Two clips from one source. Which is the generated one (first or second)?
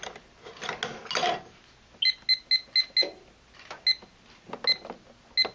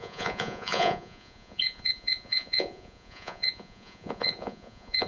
second